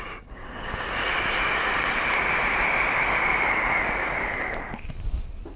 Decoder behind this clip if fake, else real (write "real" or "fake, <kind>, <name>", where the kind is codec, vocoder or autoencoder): real